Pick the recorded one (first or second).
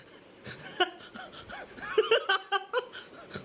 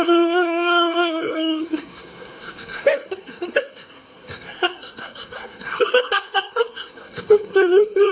first